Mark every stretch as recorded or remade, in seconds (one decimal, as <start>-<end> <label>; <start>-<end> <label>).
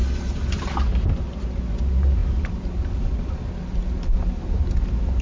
0.0-5.2 recorded